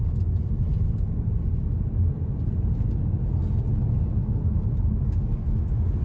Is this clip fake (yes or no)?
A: no